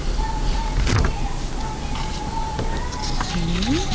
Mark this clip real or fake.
real